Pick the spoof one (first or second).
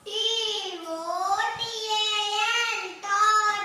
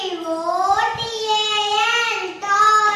first